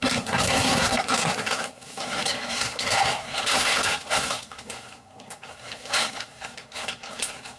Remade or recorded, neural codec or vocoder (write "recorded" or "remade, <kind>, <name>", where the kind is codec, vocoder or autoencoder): remade, codec, SNAC